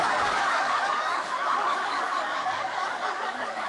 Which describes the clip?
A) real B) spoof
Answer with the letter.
B